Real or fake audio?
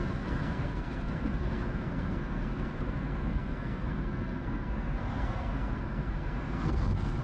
fake